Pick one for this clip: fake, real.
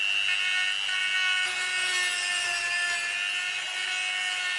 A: real